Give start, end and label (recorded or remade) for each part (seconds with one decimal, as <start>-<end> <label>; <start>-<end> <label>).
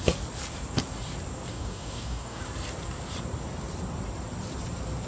0.0-1.5 recorded; 1.5-2.4 remade; 2.4-5.1 recorded